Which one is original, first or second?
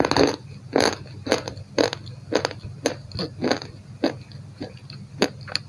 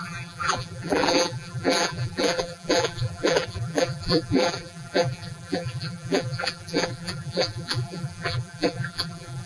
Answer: first